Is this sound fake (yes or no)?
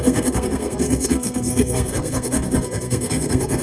yes